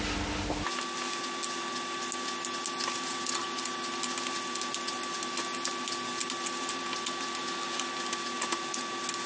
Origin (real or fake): real